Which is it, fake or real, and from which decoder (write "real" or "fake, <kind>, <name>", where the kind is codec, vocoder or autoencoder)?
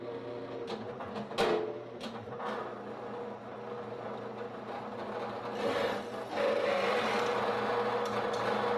real